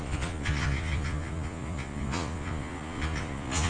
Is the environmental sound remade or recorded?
remade